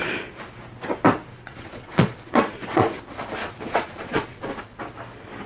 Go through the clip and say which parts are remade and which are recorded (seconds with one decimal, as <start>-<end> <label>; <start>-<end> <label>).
0.0-1.3 recorded; 1.3-3.0 remade; 3.0-3.4 recorded; 3.4-4.6 remade; 4.6-5.5 recorded